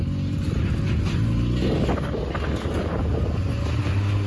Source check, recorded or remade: recorded